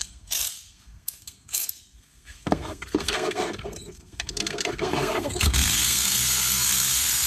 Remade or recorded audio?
remade